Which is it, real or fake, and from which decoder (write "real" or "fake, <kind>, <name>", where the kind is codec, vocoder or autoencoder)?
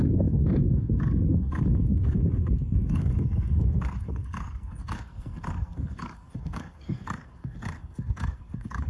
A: fake, codec, SNAC